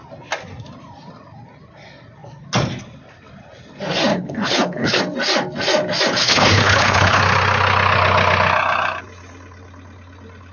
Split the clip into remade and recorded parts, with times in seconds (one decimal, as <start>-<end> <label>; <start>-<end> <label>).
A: 0.0-4.1 recorded; 4.1-5.0 remade; 5.0-6.2 recorded; 6.2-7.2 remade; 7.2-10.5 recorded